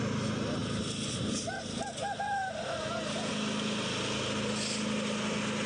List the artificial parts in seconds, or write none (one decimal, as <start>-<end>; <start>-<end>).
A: 0.6-3.3